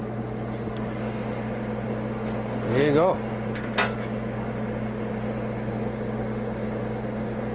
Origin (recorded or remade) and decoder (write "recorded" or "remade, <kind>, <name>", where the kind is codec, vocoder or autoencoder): recorded